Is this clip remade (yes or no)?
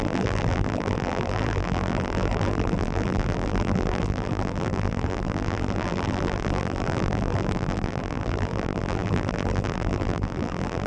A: yes